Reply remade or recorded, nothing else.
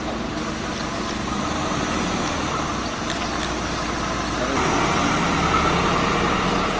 recorded